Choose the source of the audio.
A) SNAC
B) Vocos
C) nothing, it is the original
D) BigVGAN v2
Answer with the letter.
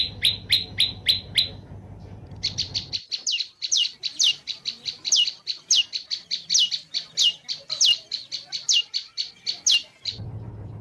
C